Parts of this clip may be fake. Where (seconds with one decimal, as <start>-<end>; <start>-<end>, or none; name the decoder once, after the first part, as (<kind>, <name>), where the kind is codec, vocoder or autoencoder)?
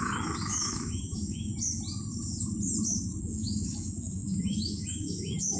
0.0-1.5 (autoencoder, DAC-VAE); 3.2-5.6